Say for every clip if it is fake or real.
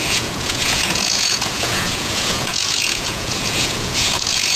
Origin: fake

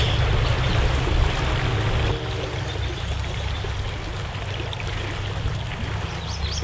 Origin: real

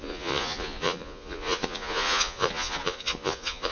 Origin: fake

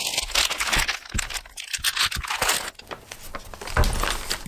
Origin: real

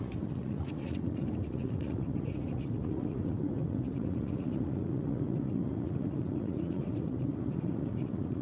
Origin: fake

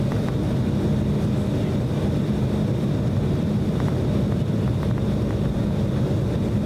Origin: real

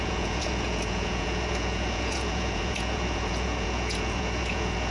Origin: fake